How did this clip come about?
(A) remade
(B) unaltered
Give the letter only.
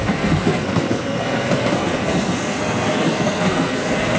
A